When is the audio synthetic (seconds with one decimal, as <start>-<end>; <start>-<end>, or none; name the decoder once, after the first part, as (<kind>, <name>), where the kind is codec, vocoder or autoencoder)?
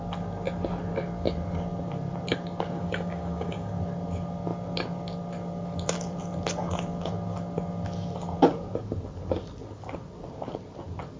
2.8-3.7 (codec, DAC)